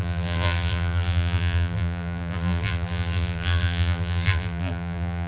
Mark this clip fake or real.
fake